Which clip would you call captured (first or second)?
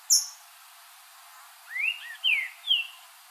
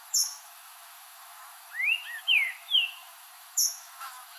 first